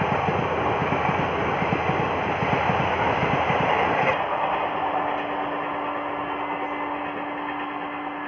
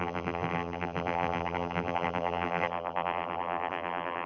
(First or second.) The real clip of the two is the first